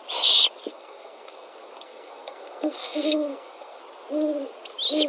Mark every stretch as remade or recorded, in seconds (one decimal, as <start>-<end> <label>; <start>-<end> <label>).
0.0-0.7 recorded; 0.7-3.8 remade; 3.8-5.1 recorded